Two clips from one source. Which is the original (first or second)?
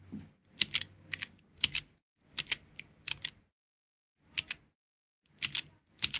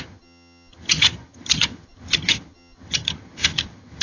first